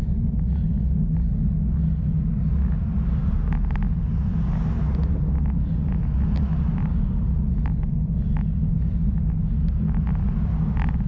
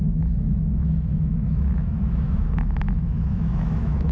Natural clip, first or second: first